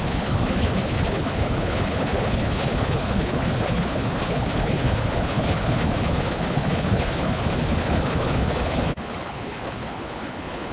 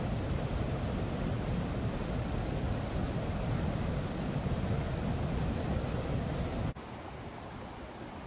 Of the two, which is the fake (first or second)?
first